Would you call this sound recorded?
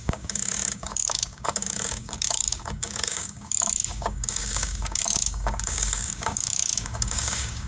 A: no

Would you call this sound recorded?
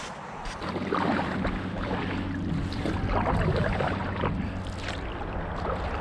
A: no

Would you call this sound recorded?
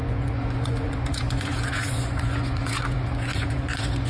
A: no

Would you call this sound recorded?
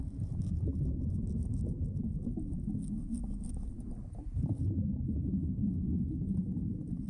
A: yes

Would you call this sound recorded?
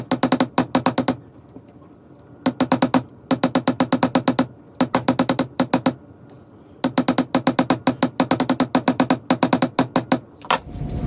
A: yes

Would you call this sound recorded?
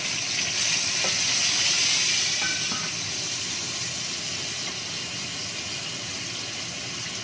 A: yes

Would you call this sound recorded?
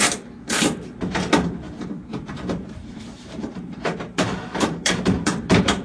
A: no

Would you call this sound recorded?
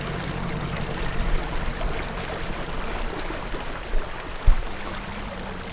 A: yes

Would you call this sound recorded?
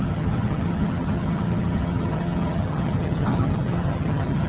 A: no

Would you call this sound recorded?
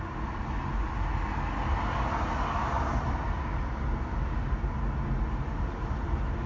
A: yes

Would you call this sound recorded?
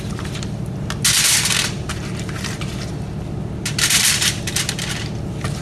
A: yes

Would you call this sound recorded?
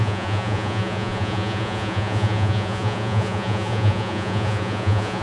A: no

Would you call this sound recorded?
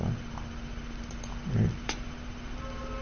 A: yes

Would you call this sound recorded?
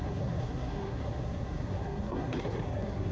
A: no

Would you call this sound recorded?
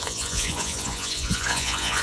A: no